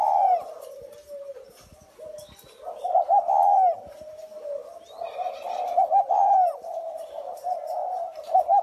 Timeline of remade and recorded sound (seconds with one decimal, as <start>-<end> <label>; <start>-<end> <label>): 0.0-1.7 remade; 1.7-5.4 recorded; 5.4-8.6 remade